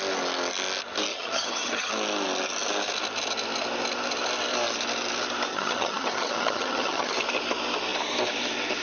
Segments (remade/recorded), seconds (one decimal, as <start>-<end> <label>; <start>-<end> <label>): 0.0-1.1 recorded; 1.1-1.9 remade; 1.9-5.5 recorded; 5.5-7.1 remade; 7.1-8.8 recorded